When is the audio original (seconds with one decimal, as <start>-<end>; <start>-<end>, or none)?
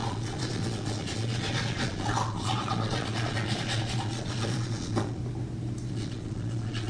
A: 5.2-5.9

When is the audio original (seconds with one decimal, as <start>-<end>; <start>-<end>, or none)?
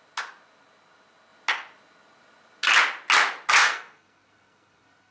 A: 0.0-3.6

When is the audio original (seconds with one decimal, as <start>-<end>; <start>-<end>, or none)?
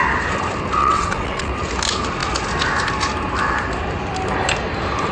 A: 0.0-0.8; 1.5-5.1